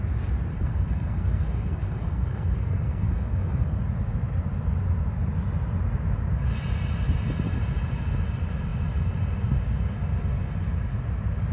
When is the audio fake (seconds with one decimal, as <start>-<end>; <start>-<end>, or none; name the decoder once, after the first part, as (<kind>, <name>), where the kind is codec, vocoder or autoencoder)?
0.5-3.8 (codec, SNAC)